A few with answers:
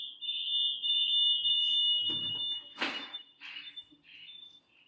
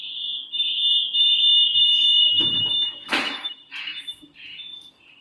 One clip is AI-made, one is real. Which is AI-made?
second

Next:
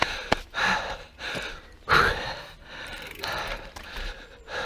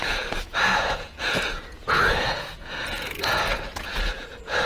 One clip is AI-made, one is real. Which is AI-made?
second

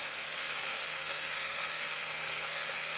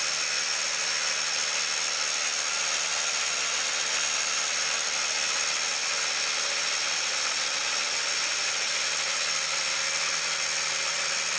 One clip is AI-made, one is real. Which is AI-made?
first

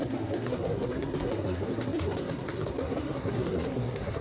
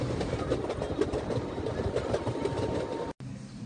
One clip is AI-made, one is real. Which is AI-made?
first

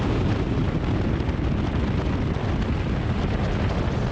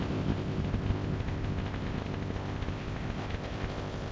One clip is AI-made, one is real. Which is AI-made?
second